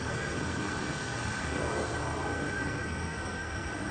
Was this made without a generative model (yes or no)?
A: no